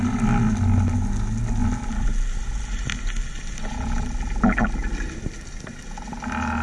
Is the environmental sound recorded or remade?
recorded